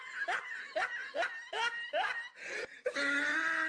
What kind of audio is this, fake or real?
real